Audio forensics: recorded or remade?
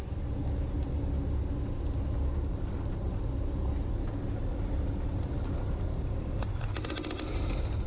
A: recorded